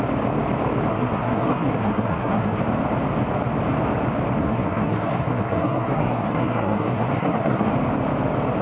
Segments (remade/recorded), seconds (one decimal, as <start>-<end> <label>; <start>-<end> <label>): 0.0-0.9 recorded; 0.9-2.6 remade; 2.6-4.4 recorded; 4.4-7.7 remade; 7.7-8.6 recorded